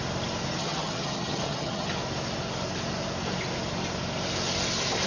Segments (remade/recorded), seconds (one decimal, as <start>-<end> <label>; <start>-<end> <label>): 0.0-0.6 recorded; 0.6-1.9 remade; 1.9-5.1 recorded